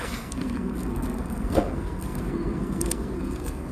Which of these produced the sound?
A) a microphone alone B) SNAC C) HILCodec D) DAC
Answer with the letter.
B